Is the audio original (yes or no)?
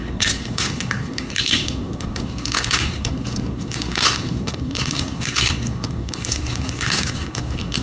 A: no